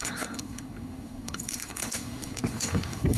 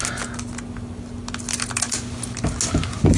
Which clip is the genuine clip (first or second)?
second